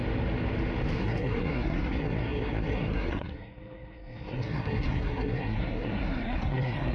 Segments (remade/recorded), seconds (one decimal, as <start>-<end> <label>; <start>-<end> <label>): 0.0-1.0 recorded; 1.0-6.9 remade